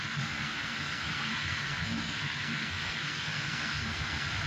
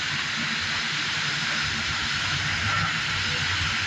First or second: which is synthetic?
first